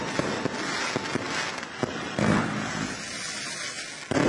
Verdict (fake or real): real